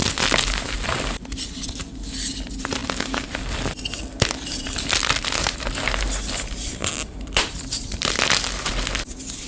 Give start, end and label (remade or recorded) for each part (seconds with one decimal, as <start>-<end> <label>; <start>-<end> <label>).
0.0-6.8 recorded; 6.8-8.2 remade; 8.2-9.5 recorded

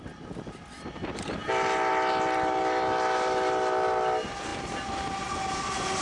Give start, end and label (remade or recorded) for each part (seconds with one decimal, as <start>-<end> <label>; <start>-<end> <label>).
0.0-6.0 recorded

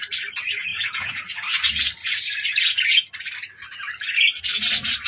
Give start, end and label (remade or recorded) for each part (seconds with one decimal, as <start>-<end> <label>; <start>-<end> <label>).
0.0-0.7 recorded; 0.7-1.3 remade; 1.3-5.1 recorded

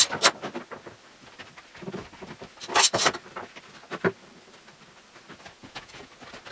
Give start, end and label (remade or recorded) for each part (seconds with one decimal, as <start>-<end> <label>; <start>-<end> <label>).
0.0-5.6 recorded; 5.6-6.1 remade; 6.1-6.5 recorded

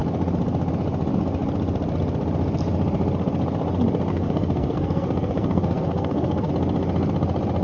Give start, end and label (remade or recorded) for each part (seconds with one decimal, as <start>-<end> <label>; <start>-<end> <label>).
0.0-4.1 recorded; 4.1-6.5 remade; 6.5-7.6 recorded